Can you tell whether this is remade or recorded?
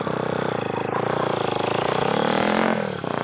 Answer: recorded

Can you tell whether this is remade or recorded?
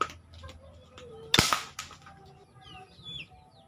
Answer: recorded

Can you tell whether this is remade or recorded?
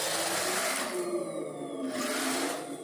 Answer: recorded